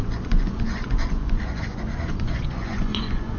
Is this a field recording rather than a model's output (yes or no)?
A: no